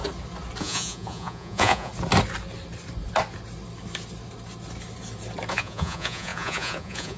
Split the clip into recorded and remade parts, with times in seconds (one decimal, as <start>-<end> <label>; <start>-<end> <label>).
0.0-0.6 recorded; 0.6-1.9 remade; 1.9-5.5 recorded; 5.5-7.2 remade